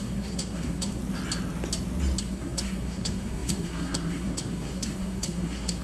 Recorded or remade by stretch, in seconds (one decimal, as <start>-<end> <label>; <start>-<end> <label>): 0.0-1.0 remade; 1.0-2.2 recorded; 2.2-5.8 remade